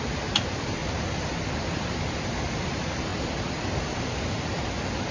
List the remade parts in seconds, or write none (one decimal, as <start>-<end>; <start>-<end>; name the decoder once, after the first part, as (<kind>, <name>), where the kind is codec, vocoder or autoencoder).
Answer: 0.0-0.8 (vocoder, BigVGAN v2); 1.6-5.1